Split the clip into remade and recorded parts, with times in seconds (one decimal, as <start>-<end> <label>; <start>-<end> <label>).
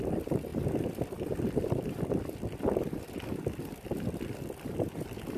0.0-5.4 recorded